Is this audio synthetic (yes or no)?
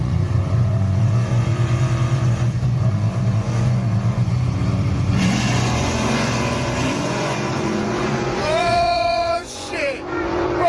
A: yes